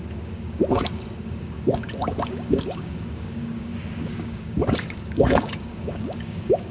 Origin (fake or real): fake